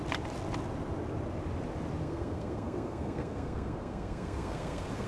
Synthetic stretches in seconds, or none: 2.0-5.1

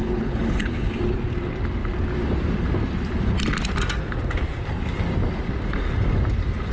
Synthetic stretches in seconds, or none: 0.0-0.9

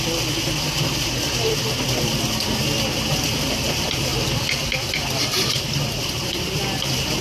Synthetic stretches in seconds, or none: 4.1-6.6

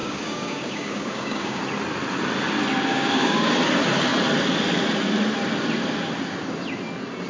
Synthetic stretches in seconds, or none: 0.0-1.6; 2.9-3.5

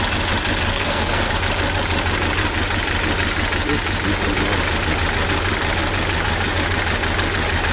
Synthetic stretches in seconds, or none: 0.7-1.3

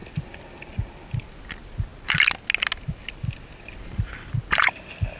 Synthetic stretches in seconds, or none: none